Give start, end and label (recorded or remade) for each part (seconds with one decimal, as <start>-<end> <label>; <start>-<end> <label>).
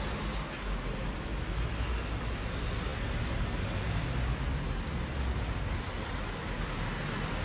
0.0-7.4 recorded